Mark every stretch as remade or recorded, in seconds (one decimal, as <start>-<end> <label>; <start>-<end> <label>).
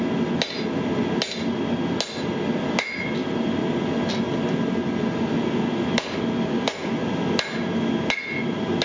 0.0-8.8 recorded